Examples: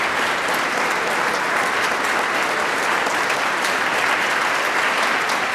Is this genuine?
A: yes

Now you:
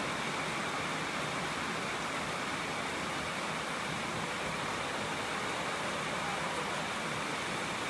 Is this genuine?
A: yes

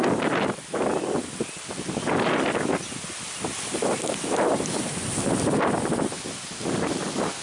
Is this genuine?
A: yes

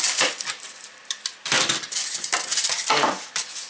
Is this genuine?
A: no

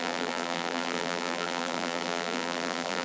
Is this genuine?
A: no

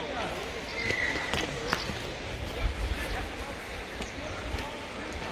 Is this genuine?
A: yes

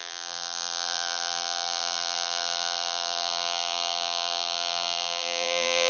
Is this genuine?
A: no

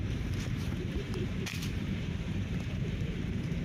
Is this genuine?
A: no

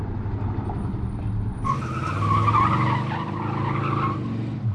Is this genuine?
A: yes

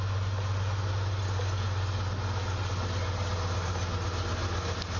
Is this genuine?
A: yes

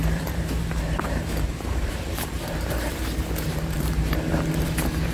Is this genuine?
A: no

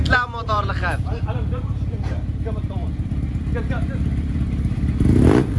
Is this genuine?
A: no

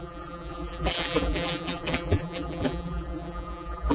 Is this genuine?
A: no